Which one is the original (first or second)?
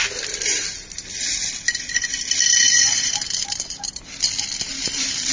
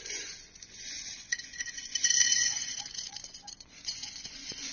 first